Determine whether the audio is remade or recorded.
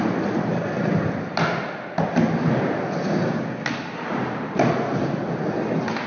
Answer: recorded